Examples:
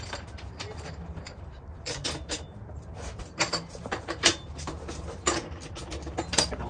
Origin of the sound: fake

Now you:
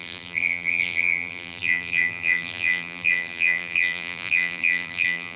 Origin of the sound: fake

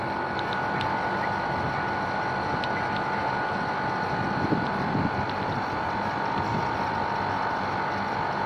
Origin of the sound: real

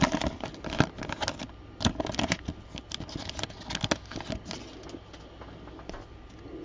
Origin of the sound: real